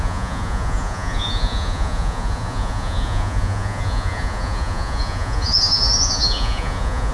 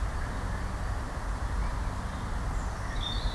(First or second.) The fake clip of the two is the first